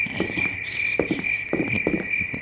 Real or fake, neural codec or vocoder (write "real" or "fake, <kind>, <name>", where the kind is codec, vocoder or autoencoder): real